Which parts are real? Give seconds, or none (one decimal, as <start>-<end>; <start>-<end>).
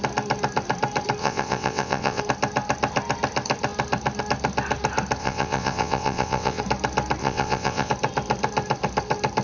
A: 0.0-1.2; 2.2-5.2; 6.6-7.2; 7.9-9.4